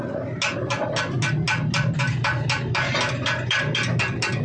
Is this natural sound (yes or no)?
yes